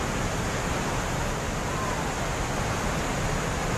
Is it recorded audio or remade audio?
recorded